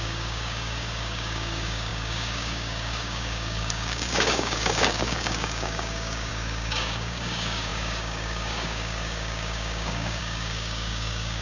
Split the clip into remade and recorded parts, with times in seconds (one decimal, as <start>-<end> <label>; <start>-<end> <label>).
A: 0.0-11.4 remade